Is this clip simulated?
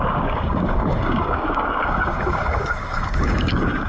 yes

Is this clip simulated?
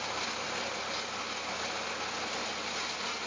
no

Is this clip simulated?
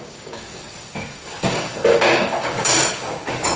yes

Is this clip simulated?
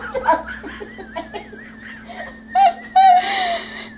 no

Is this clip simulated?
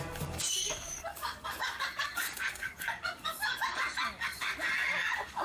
yes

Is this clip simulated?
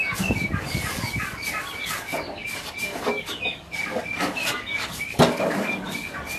yes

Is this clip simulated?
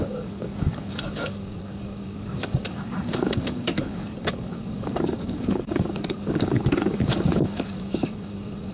yes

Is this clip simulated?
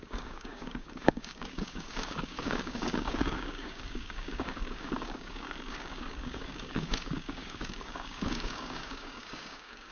yes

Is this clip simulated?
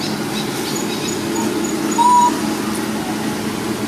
no